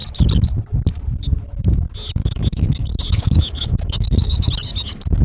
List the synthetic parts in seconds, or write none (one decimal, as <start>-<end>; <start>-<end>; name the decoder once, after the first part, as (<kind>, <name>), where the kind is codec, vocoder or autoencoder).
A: 2.2-4.5 (autoencoder, DAC-VAE)

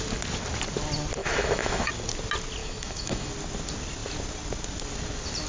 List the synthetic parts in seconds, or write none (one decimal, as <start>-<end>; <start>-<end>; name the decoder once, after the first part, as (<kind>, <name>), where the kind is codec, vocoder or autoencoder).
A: 1.2-1.9 (autoencoder, DAC-VAE); 2.6-3.3

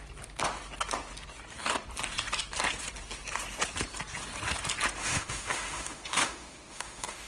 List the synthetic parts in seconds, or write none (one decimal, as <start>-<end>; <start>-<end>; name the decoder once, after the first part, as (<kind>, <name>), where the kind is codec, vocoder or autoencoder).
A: 5.0-7.3 (autoencoder, DAC-VAE)

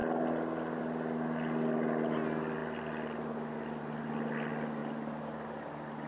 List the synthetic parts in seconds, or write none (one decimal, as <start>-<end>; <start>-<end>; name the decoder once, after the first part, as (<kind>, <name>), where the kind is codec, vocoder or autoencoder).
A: none

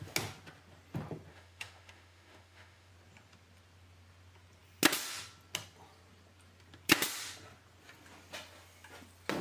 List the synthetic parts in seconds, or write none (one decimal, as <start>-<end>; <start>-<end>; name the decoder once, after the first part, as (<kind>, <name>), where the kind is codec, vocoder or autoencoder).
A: 1.3-2.9 (autoencoder, DAC-VAE)

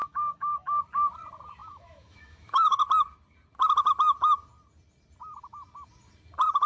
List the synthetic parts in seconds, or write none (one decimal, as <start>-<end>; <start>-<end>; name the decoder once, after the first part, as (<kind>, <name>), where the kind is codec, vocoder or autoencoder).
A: 0.0-0.8 (autoencoder, DAC-VAE); 1.6-2.8

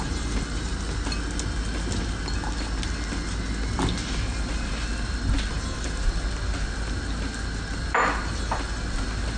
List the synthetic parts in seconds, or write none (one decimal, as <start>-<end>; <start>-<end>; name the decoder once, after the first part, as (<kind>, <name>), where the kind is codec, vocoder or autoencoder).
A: none

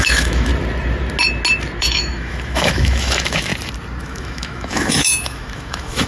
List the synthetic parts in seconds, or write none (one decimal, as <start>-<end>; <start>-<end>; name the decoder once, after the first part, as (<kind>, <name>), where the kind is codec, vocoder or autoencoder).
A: 0.0-0.5 (autoencoder, DAC-VAE); 1.8-3.5; 4.0-6.1